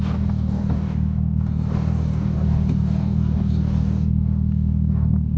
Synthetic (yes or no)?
yes